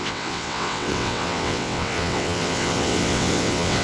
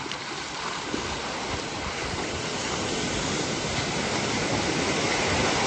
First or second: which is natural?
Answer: second